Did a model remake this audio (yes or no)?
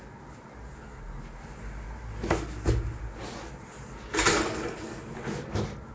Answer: no